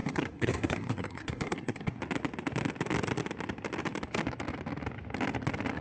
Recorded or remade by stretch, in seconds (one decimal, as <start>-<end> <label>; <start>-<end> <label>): 0.0-2.0 remade; 2.0-5.8 recorded